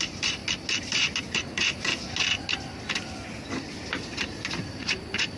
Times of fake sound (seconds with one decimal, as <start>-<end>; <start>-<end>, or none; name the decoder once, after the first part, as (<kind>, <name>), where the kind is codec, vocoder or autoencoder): 0.0-0.4 (vocoder, BigVGAN v2); 1.3-1.9; 3.9-5.4